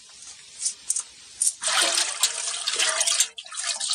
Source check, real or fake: real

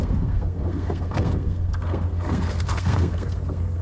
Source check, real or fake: fake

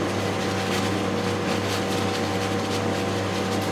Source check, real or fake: real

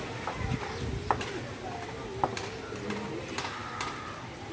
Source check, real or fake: real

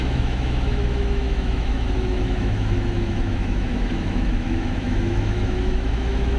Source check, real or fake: fake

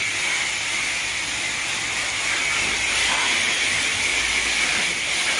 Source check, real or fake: real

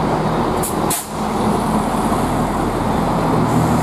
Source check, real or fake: real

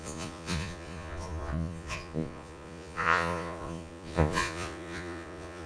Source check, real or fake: fake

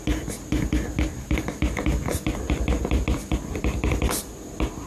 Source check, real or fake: real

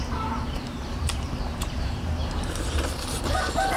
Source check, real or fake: fake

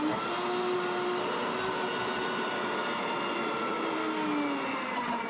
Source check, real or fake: real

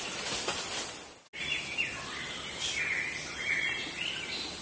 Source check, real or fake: real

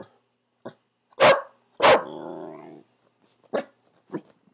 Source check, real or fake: real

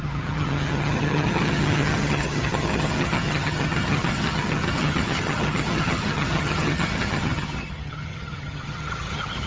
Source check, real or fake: fake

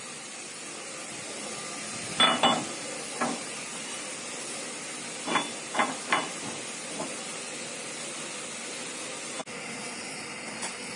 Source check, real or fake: real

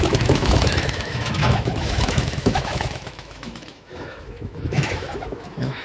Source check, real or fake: fake